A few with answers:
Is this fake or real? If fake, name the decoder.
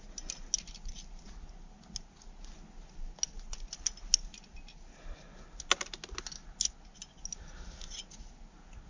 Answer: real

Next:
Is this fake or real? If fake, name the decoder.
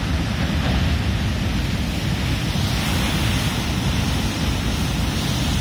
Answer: real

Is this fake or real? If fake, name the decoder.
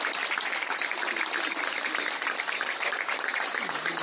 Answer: real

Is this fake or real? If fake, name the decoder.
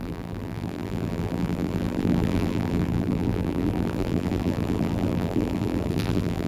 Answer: fake, vocoder, BigVGAN v2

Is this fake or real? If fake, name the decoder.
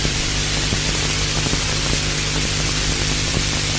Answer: fake, vocoder, BigVGAN v2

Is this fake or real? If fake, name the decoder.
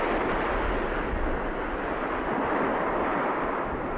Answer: real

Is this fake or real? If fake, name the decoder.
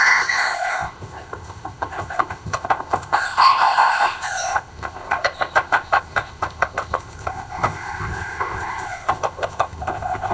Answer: fake, codec, ZipCodec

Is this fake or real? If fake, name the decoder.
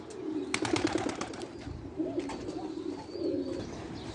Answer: real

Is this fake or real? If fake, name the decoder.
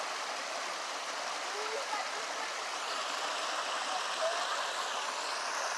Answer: real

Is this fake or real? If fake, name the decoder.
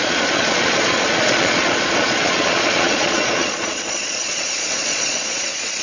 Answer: fake, vocoder, Vocos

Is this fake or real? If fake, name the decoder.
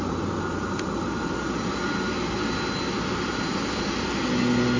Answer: real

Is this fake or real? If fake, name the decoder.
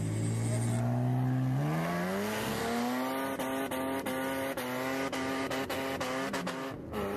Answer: real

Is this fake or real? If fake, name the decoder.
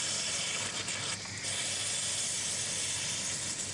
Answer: real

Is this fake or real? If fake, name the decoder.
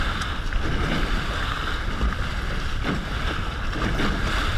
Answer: real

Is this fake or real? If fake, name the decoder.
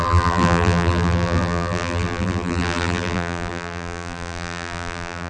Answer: fake, vocoder, BigVGAN v2